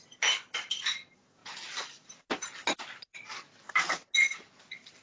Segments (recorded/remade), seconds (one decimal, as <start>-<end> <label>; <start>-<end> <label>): 0.0-5.0 recorded